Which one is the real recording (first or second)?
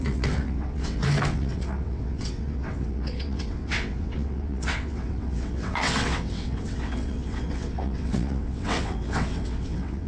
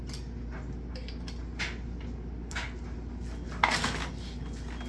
second